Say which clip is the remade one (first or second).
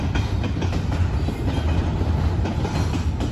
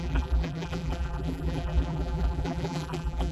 second